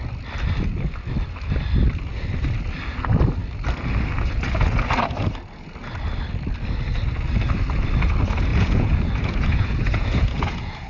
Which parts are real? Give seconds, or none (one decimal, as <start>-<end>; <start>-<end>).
0.0-8.5